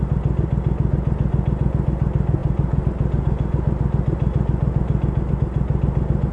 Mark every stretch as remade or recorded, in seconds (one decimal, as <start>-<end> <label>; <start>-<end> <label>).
0.0-6.3 recorded